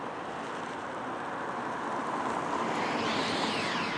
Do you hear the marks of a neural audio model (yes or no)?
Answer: no